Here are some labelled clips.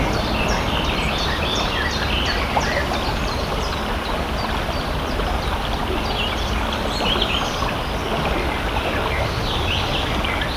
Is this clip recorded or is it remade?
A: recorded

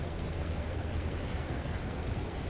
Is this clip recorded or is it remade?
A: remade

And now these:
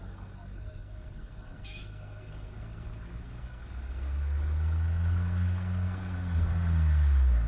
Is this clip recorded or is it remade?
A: remade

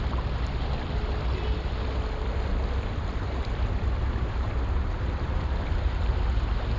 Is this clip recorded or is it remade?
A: recorded